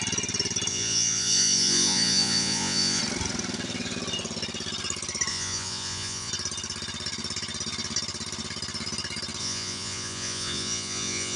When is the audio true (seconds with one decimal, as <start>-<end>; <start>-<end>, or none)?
0.0-0.7; 3.0-5.3; 6.3-9.4